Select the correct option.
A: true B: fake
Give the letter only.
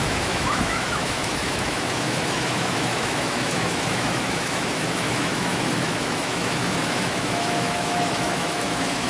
B